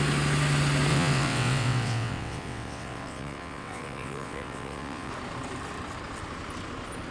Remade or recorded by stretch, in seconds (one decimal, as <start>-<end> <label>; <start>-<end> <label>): 0.0-0.9 recorded; 0.9-5.1 remade; 5.1-7.1 recorded